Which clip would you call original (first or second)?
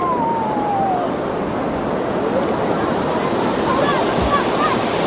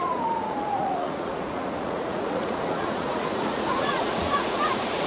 first